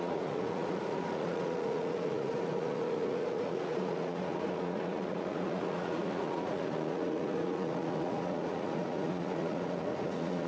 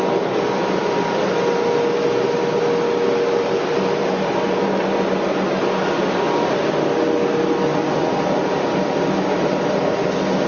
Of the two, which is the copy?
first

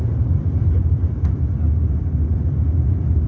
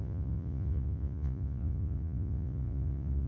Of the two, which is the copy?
second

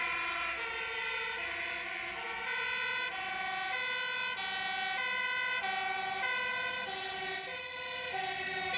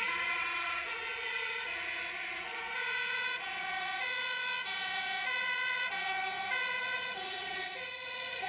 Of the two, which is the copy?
second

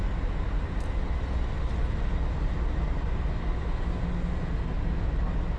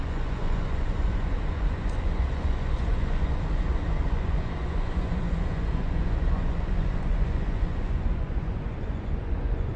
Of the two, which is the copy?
second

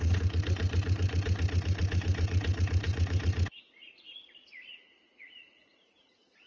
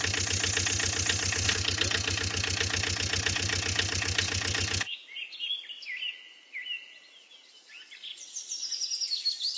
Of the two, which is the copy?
first